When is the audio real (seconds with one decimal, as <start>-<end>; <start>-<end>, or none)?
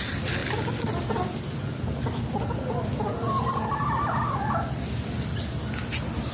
0.0-6.3